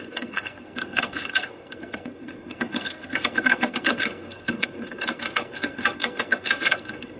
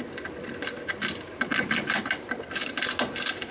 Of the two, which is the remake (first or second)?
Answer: first